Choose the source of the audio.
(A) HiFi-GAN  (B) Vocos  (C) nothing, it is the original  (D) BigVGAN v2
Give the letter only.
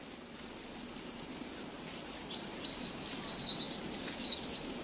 C